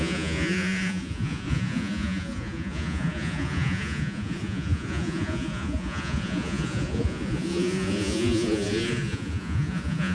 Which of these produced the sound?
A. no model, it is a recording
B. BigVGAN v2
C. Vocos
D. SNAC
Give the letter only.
C